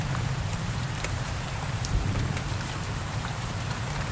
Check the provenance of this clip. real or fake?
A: fake